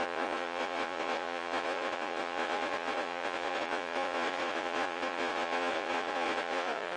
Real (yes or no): no